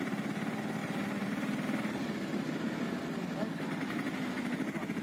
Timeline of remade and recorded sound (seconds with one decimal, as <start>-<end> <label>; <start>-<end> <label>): 0.0-0.8 recorded; 0.8-2.0 remade; 2.0-5.0 recorded